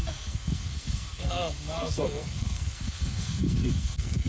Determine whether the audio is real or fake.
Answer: fake